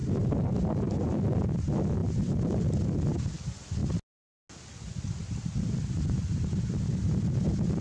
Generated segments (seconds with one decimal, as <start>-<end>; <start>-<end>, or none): none